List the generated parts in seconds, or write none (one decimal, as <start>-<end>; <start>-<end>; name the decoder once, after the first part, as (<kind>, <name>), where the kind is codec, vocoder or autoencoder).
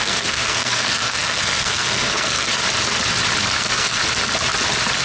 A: 0.0-2.6 (codec, SNAC); 3.6-4.0